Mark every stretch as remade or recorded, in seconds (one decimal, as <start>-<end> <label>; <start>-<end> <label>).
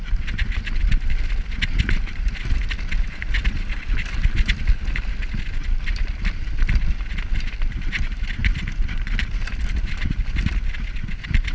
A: 0.0-11.5 recorded